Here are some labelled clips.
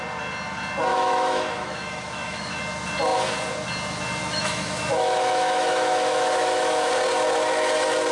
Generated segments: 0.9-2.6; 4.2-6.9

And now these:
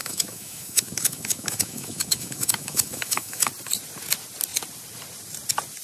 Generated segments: 0.0-3.5

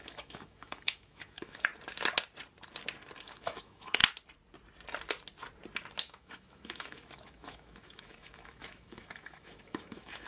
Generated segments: 0.0-1.7; 3.2-4.0; 6.0-10.3

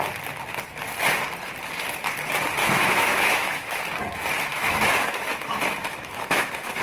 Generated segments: 2.6-3.8; 4.5-6.8